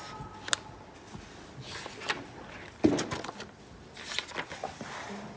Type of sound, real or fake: real